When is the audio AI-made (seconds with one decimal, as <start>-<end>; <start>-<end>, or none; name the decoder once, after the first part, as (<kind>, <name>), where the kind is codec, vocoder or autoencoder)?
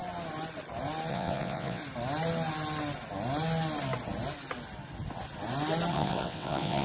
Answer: 1.1-1.8 (vocoder, WaveNeXt); 5.9-6.8